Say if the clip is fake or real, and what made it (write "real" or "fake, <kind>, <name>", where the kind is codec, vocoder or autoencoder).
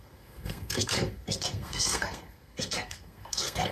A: fake, codec, SNAC